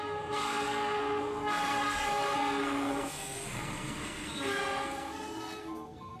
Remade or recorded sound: remade